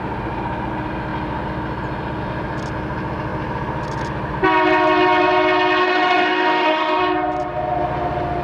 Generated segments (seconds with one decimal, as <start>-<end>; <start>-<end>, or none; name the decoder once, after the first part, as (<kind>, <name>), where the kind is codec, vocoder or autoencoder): 5.8-7.0 (autoencoder, DAC-VAE)